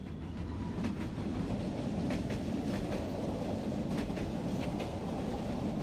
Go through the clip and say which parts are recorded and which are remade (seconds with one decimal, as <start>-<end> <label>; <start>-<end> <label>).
0.0-4.5 recorded; 4.5-5.0 remade; 5.0-5.8 recorded

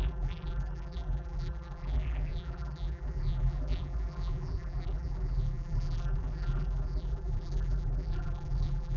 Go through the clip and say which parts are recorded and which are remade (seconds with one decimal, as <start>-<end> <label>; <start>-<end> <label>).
0.0-9.0 remade

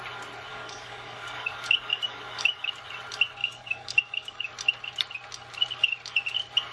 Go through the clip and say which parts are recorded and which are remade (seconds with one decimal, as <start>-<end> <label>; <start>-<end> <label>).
0.0-0.5 recorded; 0.5-2.7 remade; 2.7-3.4 recorded; 3.4-4.5 remade; 4.5-6.7 recorded

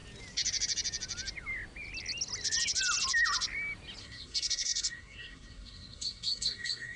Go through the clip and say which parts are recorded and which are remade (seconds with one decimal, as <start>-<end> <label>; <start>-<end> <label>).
0.0-4.0 recorded; 4.0-7.0 remade

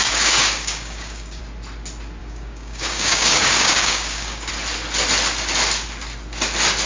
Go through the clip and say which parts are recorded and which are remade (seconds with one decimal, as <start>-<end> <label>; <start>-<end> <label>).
0.0-1.4 remade; 1.4-2.2 recorded; 2.2-4.5 remade; 4.5-6.9 recorded

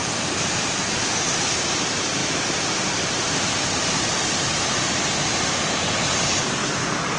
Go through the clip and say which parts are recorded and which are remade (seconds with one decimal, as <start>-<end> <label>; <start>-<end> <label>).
0.0-7.2 remade

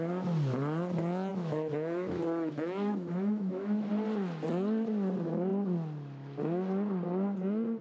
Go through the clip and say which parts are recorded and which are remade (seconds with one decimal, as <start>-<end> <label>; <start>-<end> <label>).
0.0-1.3 recorded; 1.3-3.9 remade; 3.9-7.8 recorded